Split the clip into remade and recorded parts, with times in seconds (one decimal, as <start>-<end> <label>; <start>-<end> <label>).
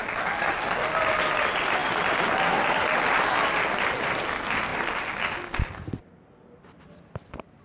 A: 0.0-7.6 recorded